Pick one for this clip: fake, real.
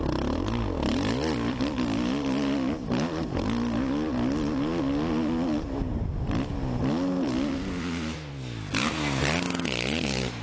real